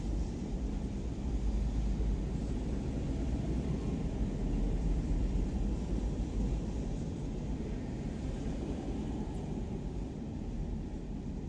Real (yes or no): yes